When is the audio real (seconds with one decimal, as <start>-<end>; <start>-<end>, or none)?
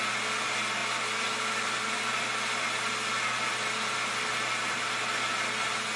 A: 0.0-6.0